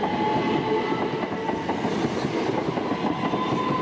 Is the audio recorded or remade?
recorded